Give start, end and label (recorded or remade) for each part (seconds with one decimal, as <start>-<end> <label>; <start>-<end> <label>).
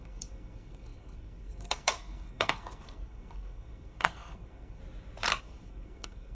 0.0-4.8 remade; 4.8-5.4 recorded; 5.4-6.3 remade